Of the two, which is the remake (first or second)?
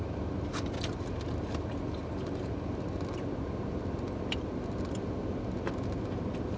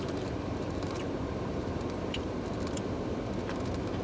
second